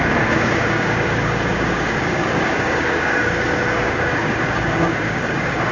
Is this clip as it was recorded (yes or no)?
no